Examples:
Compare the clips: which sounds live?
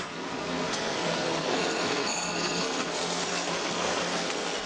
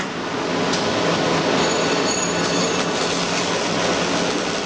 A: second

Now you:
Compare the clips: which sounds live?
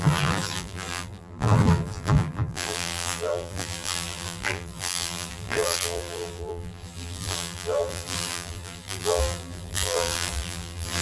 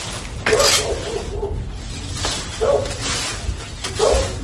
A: second